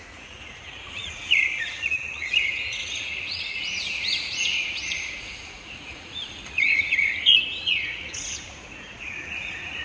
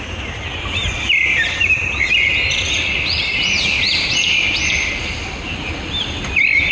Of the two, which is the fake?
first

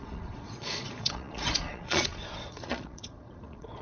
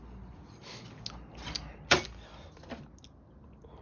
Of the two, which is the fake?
first